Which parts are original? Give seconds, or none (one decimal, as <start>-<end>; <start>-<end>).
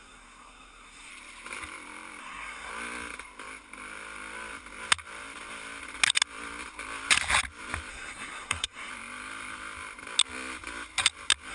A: 1.1-2.2; 2.7-7.9; 8.9-11.5